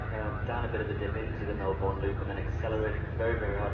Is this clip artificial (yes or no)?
no